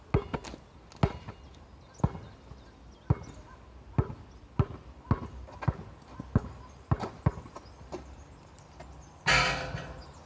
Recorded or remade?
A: recorded